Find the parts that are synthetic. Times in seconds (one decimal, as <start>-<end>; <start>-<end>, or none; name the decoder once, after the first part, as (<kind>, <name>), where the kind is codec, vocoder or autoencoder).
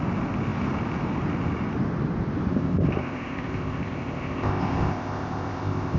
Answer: 2.5-6.0 (codec, ZipCodec)